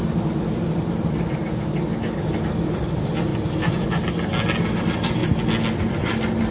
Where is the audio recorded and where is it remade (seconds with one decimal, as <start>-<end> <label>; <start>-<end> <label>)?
0.0-1.4 remade; 1.4-2.5 recorded; 2.5-3.3 remade; 3.3-4.8 recorded; 4.8-5.2 remade; 5.2-5.8 recorded; 5.8-6.5 remade